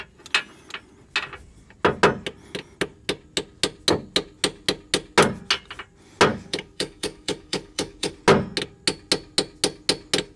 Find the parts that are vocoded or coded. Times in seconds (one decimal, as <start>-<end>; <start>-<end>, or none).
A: 6.3-8.1